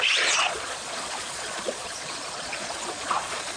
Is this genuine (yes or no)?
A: no